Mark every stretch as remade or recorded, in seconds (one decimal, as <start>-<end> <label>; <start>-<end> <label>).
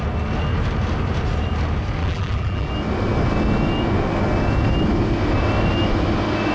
0.0-2.0 recorded; 2.0-2.7 remade; 2.7-6.5 recorded